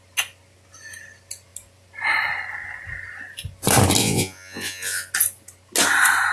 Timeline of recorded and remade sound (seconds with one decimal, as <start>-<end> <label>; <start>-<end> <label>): 0.0-4.0 recorded; 4.0-5.1 remade; 5.1-6.3 recorded